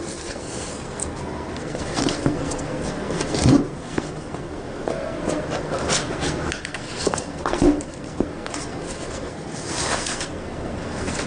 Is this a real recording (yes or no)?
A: no